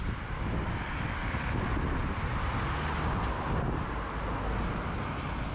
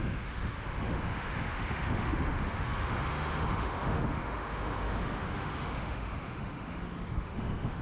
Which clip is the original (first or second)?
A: first